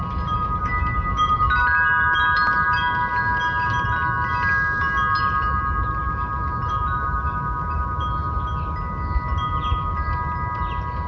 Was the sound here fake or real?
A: real